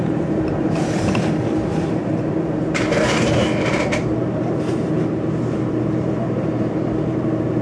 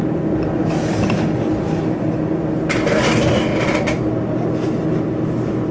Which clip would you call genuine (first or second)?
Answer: second